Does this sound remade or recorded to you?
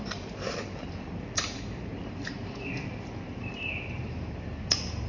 remade